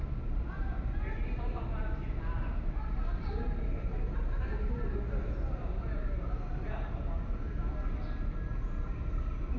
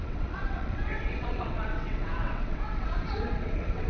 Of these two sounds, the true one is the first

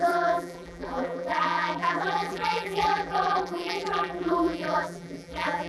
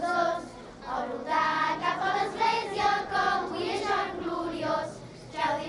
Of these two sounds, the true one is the second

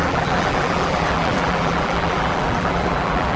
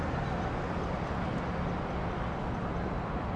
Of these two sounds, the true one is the second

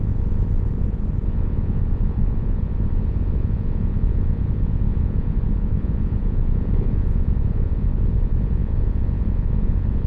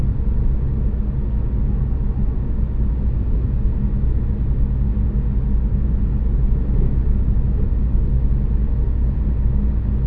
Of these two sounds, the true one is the second